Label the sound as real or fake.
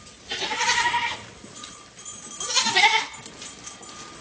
real